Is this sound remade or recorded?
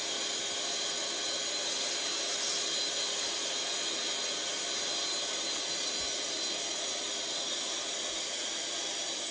recorded